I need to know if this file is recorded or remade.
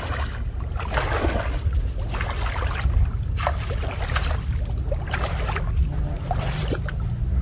recorded